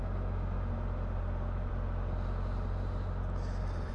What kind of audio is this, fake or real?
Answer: real